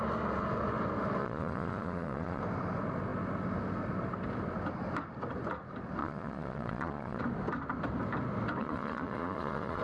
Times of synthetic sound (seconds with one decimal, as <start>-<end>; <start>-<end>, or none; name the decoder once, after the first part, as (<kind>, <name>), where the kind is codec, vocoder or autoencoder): 1.2-2.4 (vocoder, Vocos); 6.0-7.2; 8.6-9.8